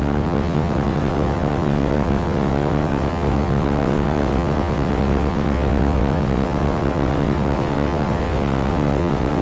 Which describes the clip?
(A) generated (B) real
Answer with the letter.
A